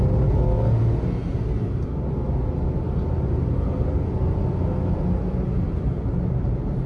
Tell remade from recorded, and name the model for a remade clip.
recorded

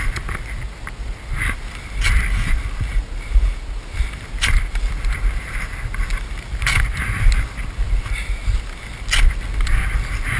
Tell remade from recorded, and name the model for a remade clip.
recorded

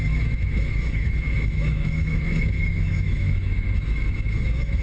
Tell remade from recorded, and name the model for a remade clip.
remade, autoencoder, DAC-VAE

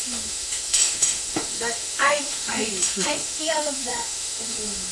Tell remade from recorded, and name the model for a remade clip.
remade, autoencoder, DAC-VAE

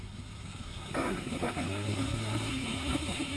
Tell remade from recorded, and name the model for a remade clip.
remade, codec, SNAC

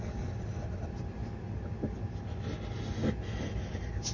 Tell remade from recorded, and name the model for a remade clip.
recorded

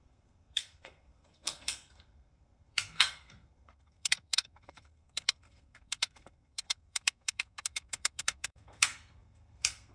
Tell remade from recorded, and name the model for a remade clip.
remade, codec, SNAC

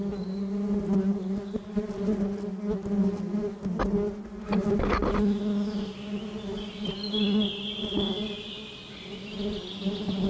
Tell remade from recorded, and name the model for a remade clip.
recorded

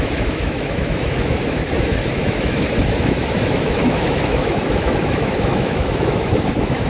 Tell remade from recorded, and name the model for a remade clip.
remade, autoencoder, DAC-VAE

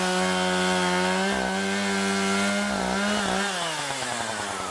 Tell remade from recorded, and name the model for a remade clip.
recorded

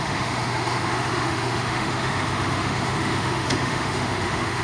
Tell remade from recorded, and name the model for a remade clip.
remade, autoencoder, DAC-VAE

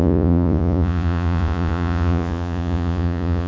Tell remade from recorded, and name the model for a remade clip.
remade, vocoder, Vocos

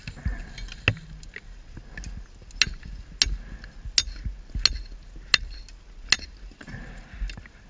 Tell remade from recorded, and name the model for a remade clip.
recorded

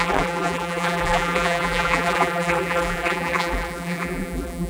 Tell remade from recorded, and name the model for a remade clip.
remade, vocoder, BigVGAN v2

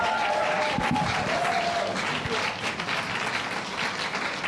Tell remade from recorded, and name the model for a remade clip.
recorded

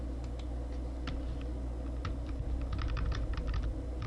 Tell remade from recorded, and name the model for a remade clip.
recorded